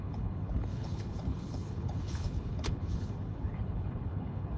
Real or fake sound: fake